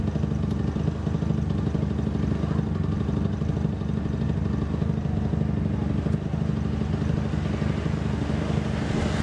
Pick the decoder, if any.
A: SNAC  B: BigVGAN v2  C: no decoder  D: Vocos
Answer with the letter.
C